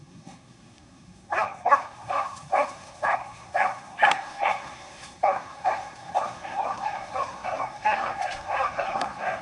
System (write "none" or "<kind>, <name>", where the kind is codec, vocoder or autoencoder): codec, SNAC